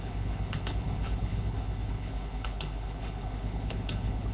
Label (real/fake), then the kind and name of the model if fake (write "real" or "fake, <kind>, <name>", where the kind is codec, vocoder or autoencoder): fake, codec, HILCodec